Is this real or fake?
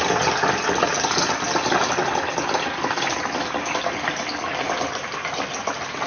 real